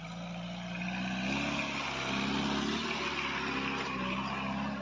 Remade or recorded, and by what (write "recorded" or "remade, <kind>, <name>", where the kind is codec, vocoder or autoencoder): recorded